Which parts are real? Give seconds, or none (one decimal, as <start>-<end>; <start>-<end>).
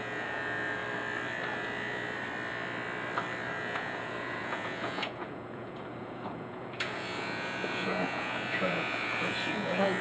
0.8-3.5